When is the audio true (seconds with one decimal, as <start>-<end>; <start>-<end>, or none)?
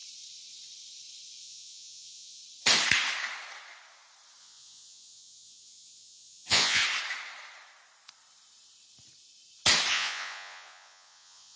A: 0.0-1.4; 2.4-4.4; 6.8-9.9